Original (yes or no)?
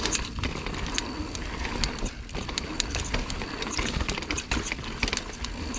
yes